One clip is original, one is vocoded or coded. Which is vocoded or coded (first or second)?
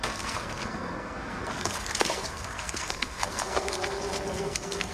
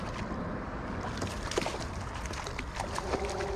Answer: first